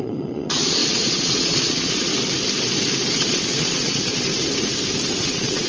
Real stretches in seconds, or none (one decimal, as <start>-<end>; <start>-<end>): 2.1-3.2; 4.3-5.2